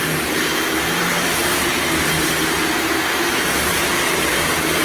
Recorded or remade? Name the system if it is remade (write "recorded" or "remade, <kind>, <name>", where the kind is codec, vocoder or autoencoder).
remade, vocoder, BigVGAN v2